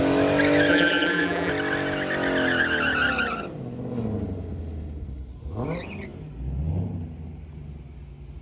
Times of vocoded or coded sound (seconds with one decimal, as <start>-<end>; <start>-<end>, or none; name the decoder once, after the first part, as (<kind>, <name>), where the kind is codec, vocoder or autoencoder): 0.7-1.5 (vocoder, BigVGAN v2)